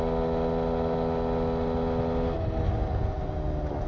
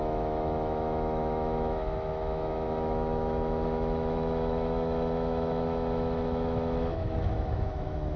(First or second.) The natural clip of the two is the first